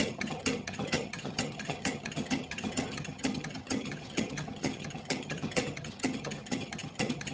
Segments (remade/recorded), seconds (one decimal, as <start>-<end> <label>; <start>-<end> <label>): 0.0-7.3 remade